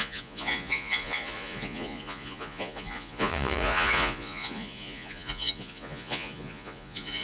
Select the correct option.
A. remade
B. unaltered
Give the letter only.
A